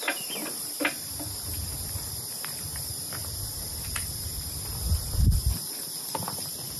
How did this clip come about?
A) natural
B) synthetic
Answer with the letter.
B